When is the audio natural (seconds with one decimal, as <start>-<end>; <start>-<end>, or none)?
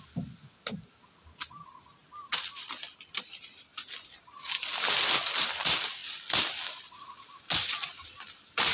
0.0-8.7